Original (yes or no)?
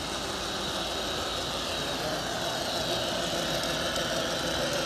yes